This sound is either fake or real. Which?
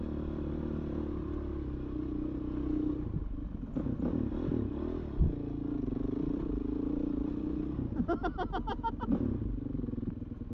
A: real